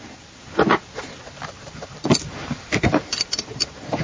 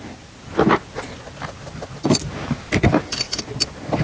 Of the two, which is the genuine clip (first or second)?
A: second